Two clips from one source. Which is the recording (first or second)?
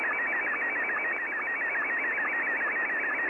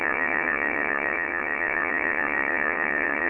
first